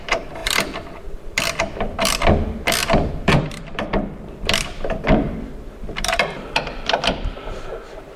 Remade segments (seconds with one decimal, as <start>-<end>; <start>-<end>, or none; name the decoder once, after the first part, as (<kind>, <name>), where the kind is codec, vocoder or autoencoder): 0.4-1.4 (vocoder, BigVGAN v2); 2.8-7.7